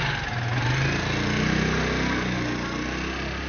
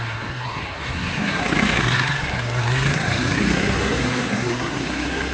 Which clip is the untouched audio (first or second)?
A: first